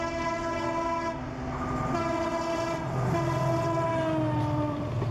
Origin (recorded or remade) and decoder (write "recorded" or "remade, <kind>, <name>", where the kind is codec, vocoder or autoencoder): recorded